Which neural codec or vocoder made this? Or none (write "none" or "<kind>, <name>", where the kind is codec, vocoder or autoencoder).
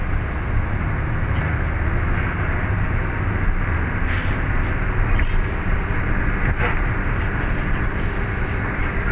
none